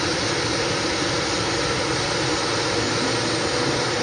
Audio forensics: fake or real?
real